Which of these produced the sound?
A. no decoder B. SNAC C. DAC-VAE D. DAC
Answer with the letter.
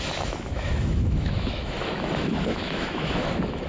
C